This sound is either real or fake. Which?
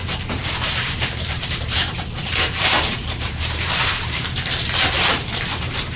fake